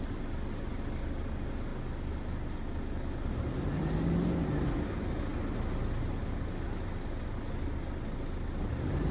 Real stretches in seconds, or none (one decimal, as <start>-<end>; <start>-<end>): 0.0-9.1